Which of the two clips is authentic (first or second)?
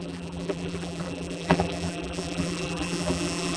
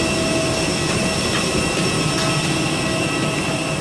second